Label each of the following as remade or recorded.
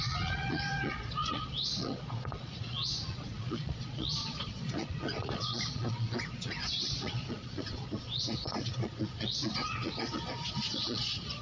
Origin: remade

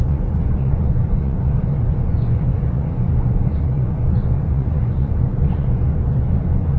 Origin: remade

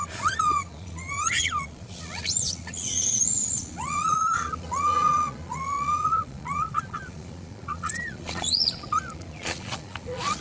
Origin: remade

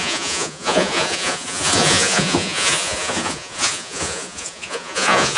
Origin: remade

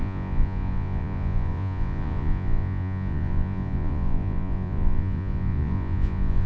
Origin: remade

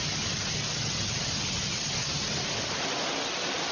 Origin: recorded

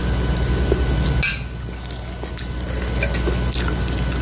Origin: recorded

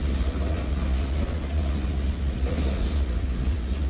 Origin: remade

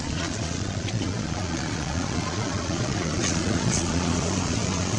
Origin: remade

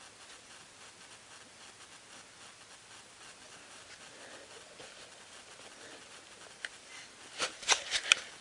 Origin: recorded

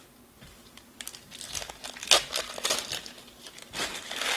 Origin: recorded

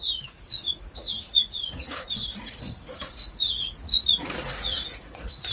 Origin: remade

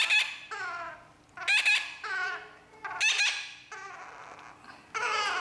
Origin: recorded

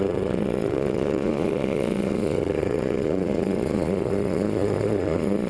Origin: remade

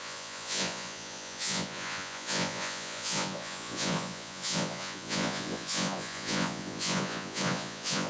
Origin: remade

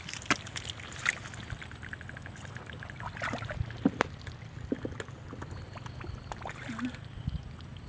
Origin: recorded